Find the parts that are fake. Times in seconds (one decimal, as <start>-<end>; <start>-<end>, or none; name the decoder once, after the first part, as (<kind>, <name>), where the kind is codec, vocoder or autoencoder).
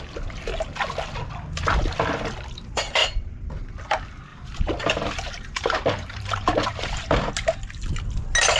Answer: 3.0-3.5 (vocoder, BigVGAN v2); 4.3-7.3